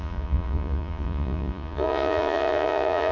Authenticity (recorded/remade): remade